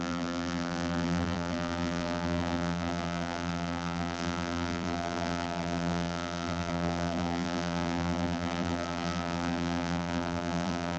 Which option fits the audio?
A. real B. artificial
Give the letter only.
B